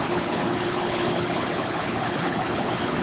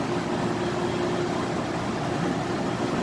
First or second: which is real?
second